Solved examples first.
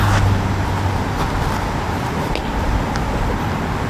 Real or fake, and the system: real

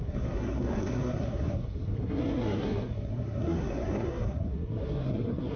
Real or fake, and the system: fake, codec, SNAC